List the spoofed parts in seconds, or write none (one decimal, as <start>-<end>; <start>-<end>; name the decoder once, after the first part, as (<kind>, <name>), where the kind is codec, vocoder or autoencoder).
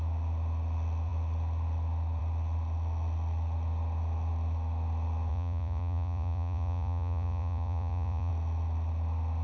5.3-8.3 (vocoder, Vocos)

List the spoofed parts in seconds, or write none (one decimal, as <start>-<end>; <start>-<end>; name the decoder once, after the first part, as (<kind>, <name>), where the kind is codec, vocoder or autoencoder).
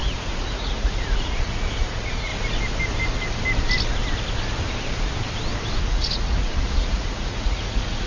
0.0-2.3 (vocoder, Vocos); 5.8-8.1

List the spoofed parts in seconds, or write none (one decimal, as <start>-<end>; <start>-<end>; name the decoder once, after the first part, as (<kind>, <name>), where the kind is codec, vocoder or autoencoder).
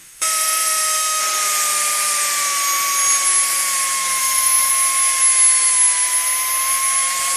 0.0-1.2 (autoencoder, DAC-VAE); 4.2-4.7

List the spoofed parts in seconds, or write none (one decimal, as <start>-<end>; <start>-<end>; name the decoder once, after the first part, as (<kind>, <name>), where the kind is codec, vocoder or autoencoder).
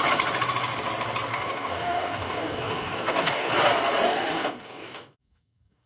1.3-3.5 (codec, DAC); 4.3-5.9